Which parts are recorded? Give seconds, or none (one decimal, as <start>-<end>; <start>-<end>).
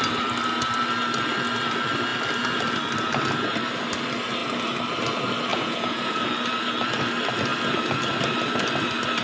0.0-5.5; 6.2-9.2